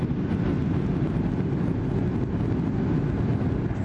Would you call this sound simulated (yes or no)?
no